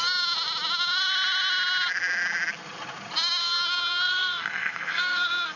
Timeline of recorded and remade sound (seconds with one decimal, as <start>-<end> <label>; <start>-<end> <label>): 0.0-3.4 recorded; 3.4-5.6 remade